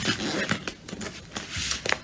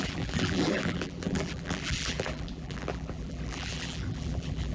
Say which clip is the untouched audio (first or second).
first